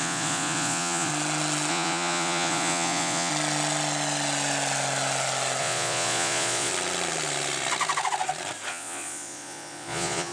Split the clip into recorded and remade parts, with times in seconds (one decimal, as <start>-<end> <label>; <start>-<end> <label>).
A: 0.0-1.1 remade; 1.1-1.7 recorded; 1.7-3.3 remade; 3.3-5.6 recorded; 5.6-6.7 remade; 6.7-8.7 recorded; 8.7-10.3 remade